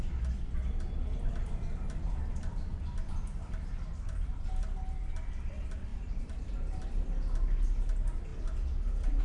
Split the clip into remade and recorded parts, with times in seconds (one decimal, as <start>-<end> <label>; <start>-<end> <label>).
0.0-5.9 recorded; 5.9-6.5 remade; 6.5-9.2 recorded